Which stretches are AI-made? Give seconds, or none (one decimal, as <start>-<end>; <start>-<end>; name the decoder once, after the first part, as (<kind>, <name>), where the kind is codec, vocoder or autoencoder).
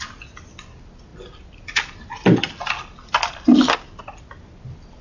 none